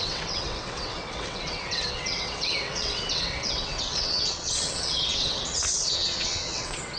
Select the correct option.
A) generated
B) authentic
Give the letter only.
A